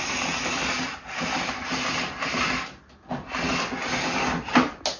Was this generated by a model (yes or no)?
no